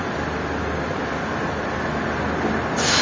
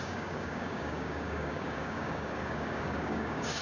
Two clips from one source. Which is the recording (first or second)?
first